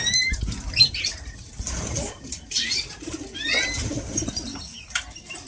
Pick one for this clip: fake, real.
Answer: real